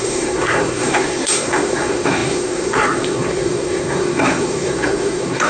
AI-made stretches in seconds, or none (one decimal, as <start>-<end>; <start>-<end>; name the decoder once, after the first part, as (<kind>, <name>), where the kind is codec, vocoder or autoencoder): 0.0-5.5 (codec, SNAC)